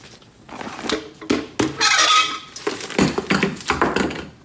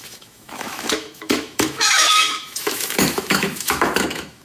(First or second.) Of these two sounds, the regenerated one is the second